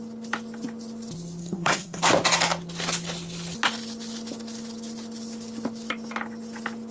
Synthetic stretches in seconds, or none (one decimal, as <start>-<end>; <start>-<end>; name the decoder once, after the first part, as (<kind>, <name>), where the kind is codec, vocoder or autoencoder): 1.4-2.0 (codec, SNAC)